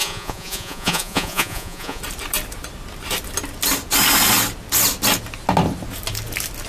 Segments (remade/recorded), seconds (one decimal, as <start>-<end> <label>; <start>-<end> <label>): 0.0-2.0 remade; 2.0-6.7 recorded

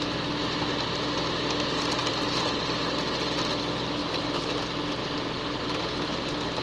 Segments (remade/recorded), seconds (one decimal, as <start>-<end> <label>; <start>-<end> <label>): 0.0-2.0 recorded; 2.0-2.6 remade; 2.6-4.0 recorded; 4.0-4.5 remade; 4.5-5.0 recorded; 5.0-5.8 remade; 5.8-6.6 recorded

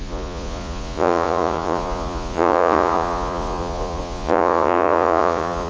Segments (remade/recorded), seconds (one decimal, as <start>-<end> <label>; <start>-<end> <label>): 0.0-5.7 remade

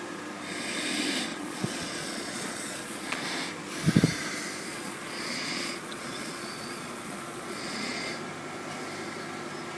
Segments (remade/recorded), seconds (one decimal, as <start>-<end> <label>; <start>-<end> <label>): 0.0-1.3 recorded; 1.3-3.2 remade; 3.2-4.7 recorded; 4.7-8.1 remade; 8.1-9.8 recorded

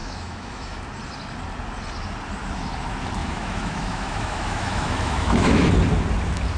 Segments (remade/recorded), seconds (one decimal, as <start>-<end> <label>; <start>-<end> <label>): 0.0-0.8 remade; 0.8-3.2 recorded; 3.2-5.7 remade; 5.7-6.6 recorded

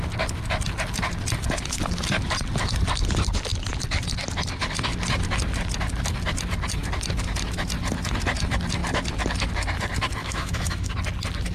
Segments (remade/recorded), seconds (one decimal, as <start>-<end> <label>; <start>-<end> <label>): 0.0-10.2 recorded; 10.2-10.9 remade; 10.9-11.5 recorded